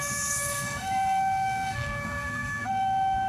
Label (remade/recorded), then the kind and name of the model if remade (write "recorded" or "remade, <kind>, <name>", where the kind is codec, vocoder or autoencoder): remade, codec, SNAC